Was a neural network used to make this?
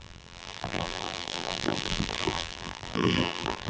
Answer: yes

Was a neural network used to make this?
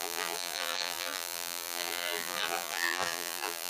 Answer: yes